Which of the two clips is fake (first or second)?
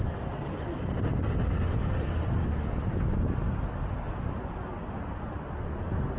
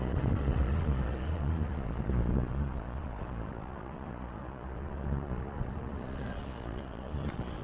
second